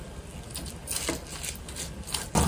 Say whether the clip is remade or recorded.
recorded